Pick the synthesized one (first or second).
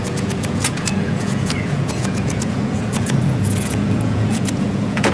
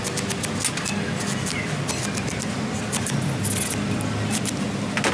first